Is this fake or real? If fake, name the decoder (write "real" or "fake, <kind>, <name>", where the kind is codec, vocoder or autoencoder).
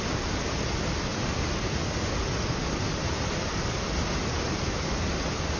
real